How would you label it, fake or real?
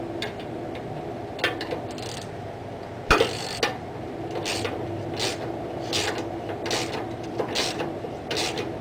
real